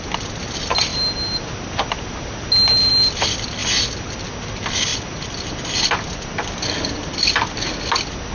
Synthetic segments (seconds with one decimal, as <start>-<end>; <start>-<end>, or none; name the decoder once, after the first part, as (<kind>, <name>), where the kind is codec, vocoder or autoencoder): none